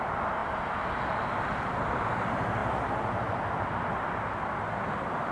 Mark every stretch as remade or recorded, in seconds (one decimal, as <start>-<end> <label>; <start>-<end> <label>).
0.0-5.3 recorded